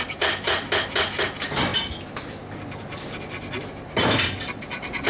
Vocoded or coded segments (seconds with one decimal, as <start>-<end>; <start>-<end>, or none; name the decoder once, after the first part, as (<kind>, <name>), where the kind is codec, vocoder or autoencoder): none